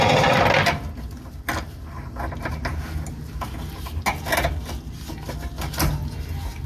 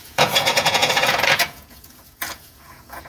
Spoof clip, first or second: second